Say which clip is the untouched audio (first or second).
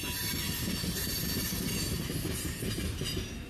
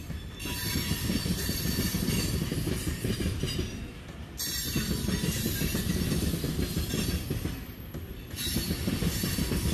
first